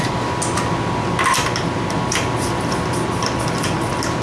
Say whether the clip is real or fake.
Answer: real